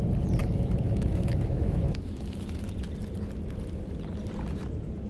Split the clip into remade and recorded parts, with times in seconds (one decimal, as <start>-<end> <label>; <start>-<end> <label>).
0.0-0.4 recorded; 0.4-2.6 remade; 2.6-5.1 recorded